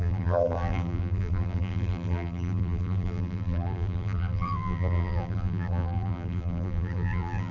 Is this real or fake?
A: fake